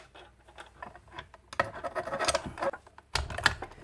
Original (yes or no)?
yes